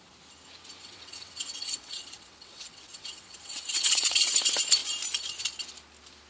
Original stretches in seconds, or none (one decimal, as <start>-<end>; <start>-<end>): 0.0-0.8; 4.3-6.3

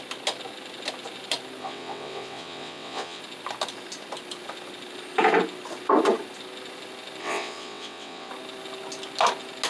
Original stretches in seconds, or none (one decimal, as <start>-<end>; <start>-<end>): 0.0-1.6; 3.2-7.2; 8.3-9.7

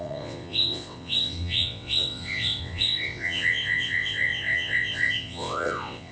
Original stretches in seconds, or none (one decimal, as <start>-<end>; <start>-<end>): none

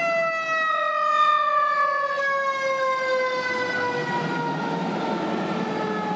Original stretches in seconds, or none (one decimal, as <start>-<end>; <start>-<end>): 0.0-0.7; 2.2-6.2

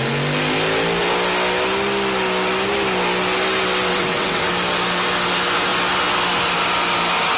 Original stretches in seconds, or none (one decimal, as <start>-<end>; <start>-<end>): 0.0-3.9; 4.5-7.4